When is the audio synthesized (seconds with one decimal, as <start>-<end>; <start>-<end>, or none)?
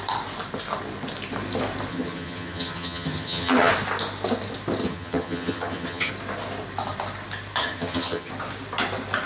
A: 1.9-3.7; 4.8-6.1; 7.6-8.3